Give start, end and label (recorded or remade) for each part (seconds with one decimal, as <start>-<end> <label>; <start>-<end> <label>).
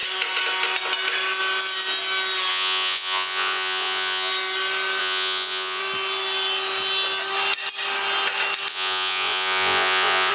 0.0-2.5 recorded; 2.5-4.3 remade; 4.3-5.0 recorded; 5.0-5.8 remade; 5.8-8.7 recorded; 8.7-10.3 remade